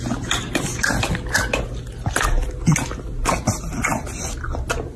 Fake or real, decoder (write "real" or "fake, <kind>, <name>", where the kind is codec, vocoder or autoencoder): real